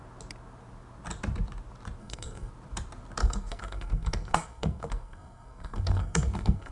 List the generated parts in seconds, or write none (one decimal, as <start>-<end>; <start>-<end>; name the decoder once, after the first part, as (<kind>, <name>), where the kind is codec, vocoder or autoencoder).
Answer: 2.0-2.5 (codec, SNAC); 3.2-6.7